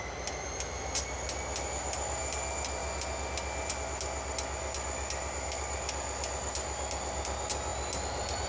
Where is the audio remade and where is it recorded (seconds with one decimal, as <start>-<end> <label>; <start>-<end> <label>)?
0.0-8.5 recorded